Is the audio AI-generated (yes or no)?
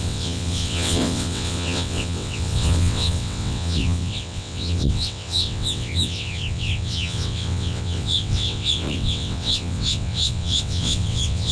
yes